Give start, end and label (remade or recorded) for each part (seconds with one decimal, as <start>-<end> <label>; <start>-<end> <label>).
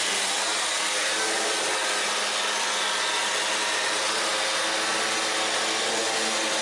0.0-6.6 recorded